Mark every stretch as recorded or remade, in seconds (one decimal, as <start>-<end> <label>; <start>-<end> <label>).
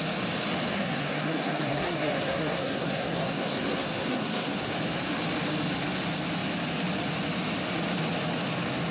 0.0-0.7 recorded; 0.7-4.7 remade; 4.7-8.9 recorded